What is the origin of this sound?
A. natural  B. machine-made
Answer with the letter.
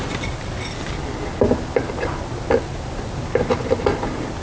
A